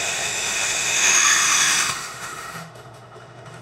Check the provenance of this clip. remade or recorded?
remade